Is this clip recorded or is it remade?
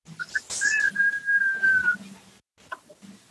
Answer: recorded